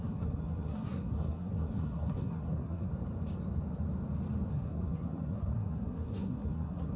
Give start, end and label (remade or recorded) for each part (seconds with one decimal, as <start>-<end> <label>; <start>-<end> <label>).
0.0-2.9 remade; 2.9-4.5 recorded; 4.5-7.0 remade